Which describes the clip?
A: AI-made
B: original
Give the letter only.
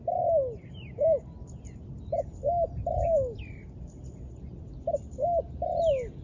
B